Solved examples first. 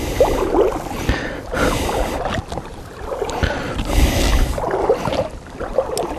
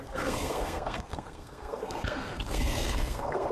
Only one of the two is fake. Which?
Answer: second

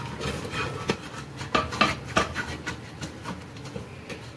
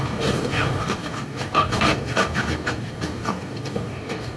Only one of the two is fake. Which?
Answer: second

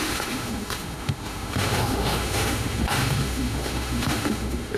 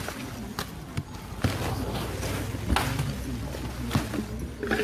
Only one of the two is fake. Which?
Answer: first